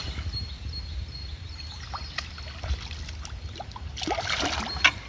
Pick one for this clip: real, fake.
real